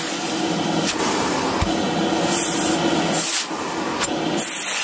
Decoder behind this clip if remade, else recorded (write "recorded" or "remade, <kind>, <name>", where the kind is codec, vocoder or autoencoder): recorded